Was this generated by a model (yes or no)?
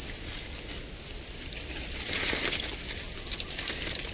no